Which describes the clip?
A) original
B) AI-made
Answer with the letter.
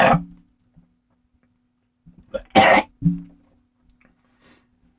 A